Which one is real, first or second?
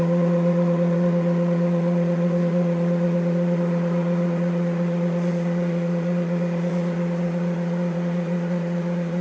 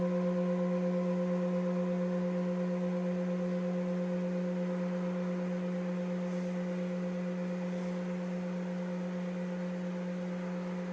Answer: second